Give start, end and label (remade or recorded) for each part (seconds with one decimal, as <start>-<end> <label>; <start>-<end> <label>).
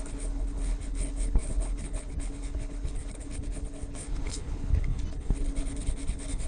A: 0.0-6.5 remade